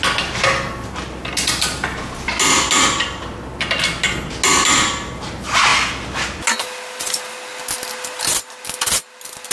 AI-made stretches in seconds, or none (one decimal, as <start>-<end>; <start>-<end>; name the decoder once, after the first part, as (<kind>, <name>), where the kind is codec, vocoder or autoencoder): none